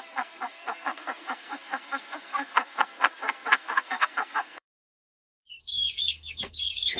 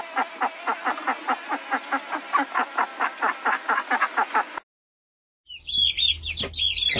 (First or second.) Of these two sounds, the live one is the second